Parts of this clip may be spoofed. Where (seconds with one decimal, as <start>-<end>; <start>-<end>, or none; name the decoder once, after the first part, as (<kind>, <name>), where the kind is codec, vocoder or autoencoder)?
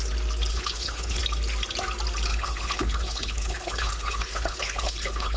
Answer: 0.5-1.2 (codec, HILCodec); 2.3-5.4